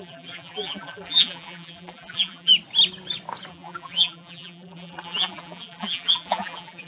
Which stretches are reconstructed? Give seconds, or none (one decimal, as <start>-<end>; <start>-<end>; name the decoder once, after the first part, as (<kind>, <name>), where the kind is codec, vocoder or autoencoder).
0.0-2.5 (vocoder, BigVGAN v2); 3.5-6.9